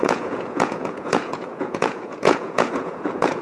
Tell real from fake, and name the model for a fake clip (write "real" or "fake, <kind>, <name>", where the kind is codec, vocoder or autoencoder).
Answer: fake, vocoder, Vocos